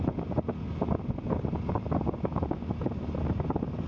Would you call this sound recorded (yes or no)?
yes